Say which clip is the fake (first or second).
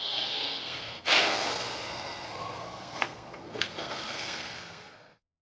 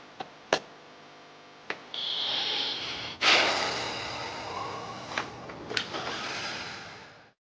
first